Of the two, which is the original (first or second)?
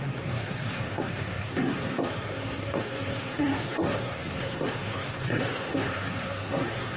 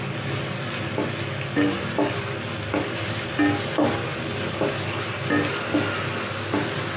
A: second